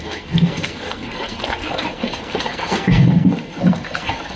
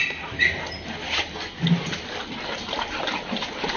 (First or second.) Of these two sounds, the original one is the second